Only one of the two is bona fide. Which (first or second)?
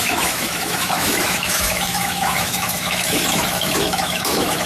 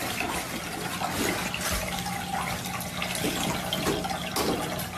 second